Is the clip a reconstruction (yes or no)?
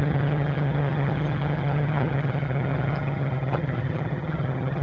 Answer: yes